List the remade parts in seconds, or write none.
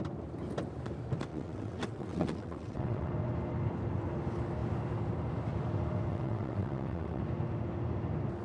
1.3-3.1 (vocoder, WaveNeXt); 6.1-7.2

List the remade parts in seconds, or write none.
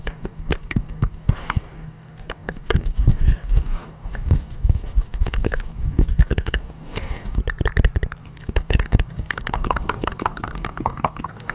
0.0-7.4 (codec, DAC); 8.2-11.5